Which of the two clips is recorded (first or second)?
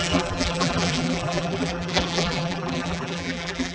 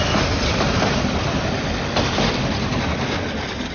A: second